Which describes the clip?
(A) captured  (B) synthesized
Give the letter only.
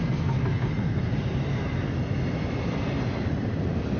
A